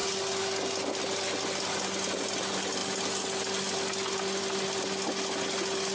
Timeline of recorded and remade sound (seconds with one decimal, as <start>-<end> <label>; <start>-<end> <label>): 0.0-5.9 recorded